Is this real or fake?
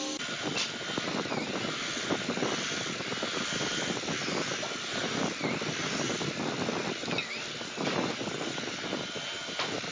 real